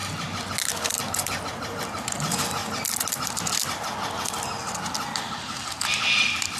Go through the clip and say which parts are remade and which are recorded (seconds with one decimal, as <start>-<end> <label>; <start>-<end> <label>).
0.0-6.6 recorded